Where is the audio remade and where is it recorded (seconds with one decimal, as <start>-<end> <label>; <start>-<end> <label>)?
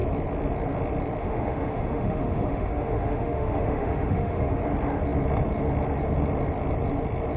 0.0-1.2 recorded; 1.2-4.6 remade; 4.6-7.4 recorded